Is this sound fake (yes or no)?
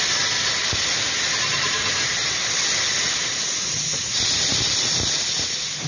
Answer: no